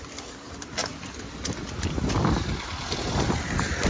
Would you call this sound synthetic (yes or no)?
yes